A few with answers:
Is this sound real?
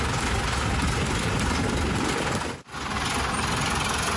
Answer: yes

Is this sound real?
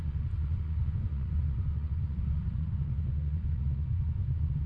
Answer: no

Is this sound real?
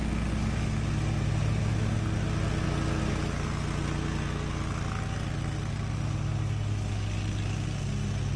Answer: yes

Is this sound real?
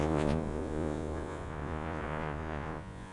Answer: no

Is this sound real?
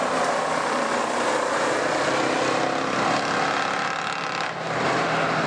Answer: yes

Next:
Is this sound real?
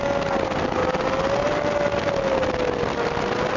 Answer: yes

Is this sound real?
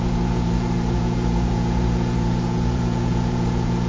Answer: no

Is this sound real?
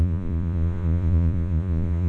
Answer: no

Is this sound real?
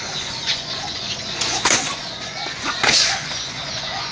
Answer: no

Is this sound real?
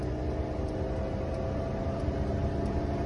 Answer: yes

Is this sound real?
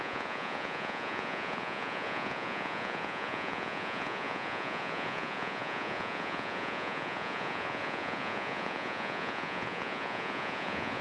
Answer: no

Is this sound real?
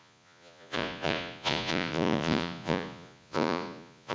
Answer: no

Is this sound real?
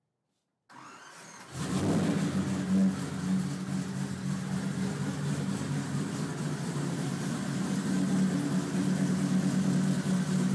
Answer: yes